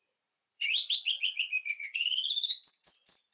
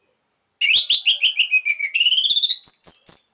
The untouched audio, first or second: second